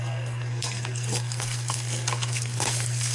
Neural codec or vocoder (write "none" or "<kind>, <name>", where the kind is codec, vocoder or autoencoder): codec, SNAC